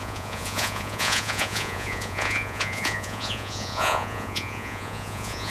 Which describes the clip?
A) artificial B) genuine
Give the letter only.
A